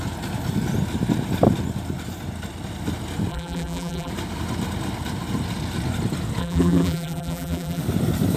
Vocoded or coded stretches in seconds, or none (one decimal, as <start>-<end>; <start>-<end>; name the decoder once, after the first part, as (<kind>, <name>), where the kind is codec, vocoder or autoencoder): 3.3-4.1 (vocoder, BigVGAN v2); 6.4-7.8